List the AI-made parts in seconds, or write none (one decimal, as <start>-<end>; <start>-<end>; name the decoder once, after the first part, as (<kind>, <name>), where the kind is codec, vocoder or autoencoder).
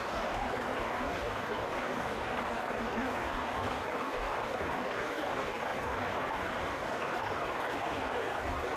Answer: 0.0-8.8 (codec, DAC)